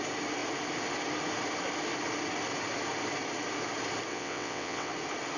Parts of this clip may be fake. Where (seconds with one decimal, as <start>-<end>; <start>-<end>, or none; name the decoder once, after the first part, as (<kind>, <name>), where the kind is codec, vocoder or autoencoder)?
4.1-4.9 (vocoder, WaveNeXt)